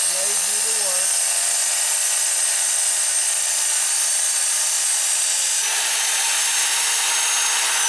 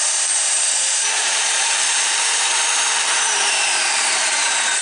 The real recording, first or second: first